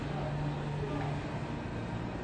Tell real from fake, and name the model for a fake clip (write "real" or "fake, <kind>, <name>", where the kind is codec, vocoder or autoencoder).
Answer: real